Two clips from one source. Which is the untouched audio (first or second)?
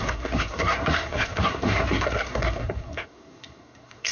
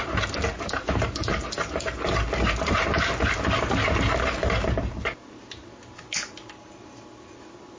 second